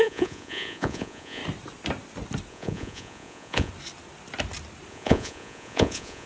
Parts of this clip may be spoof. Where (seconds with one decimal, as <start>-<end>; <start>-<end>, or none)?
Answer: 0.0-1.4; 2.5-3.7; 4.9-6.3